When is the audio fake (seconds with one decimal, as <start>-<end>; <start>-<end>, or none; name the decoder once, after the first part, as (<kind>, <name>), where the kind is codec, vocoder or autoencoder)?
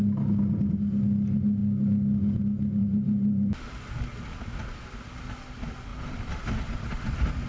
2.8-3.5 (vocoder, BigVGAN v2); 5.9-7.5